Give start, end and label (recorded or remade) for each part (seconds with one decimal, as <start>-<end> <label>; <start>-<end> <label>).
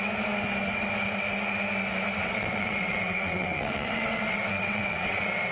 0.0-2.2 recorded; 2.2-5.5 remade